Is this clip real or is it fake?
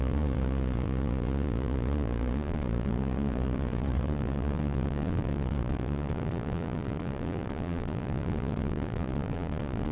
fake